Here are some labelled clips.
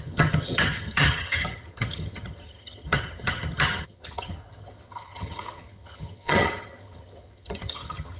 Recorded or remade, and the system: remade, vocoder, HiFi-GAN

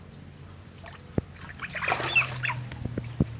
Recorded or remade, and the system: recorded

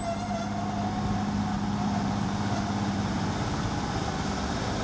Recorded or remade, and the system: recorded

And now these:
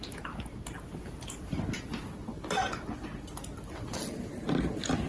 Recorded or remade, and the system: recorded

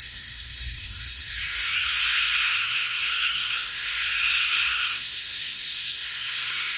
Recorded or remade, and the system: remade, codec, SNAC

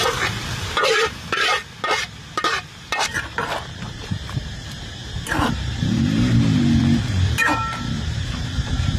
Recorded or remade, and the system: remade, vocoder, BigVGAN v2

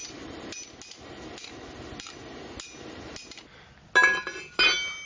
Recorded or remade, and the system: recorded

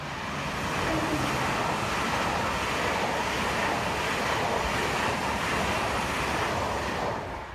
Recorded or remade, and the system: recorded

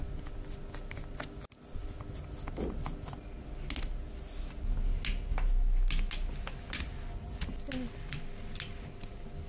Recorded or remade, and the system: recorded